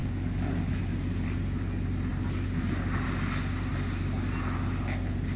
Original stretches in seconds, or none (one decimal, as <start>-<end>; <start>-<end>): 0.8-5.4